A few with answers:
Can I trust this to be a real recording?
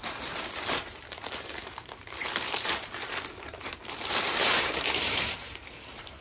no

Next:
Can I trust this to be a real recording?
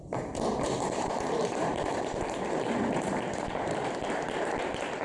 no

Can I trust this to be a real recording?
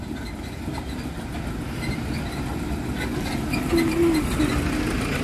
yes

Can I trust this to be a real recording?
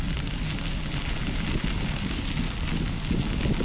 yes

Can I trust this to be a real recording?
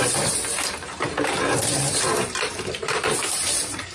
no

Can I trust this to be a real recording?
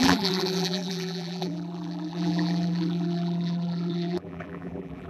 no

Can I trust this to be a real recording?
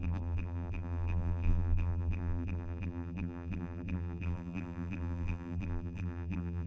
no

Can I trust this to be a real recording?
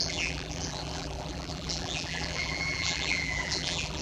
no